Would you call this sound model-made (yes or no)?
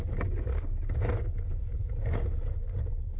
no